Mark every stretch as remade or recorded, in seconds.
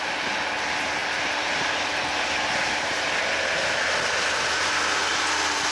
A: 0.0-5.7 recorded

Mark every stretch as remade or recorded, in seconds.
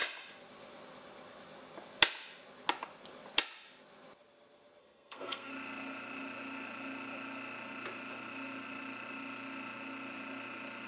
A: 0.0-4.8 recorded; 4.8-5.5 remade; 5.5-10.9 recorded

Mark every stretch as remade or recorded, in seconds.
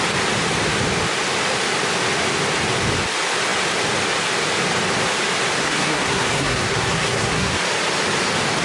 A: 0.0-5.6 recorded; 5.6-7.5 remade; 7.5-8.6 recorded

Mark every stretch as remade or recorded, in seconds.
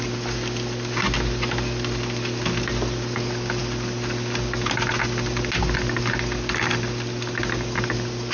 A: 0.0-8.3 recorded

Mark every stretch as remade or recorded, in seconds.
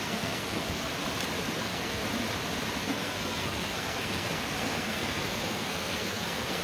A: 0.0-0.9 remade; 0.9-1.6 recorded; 1.6-2.0 remade; 2.0-2.8 recorded; 2.8-6.6 remade